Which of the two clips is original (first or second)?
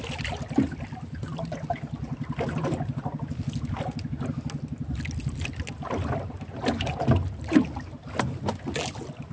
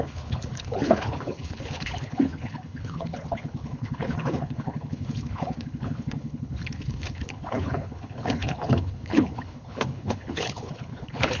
first